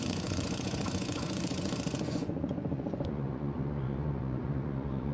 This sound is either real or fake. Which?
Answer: fake